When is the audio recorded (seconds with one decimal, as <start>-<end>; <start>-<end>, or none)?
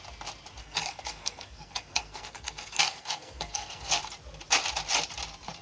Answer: 0.0-0.6; 4.0-5.6